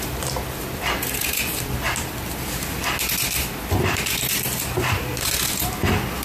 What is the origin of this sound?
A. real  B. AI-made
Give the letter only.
A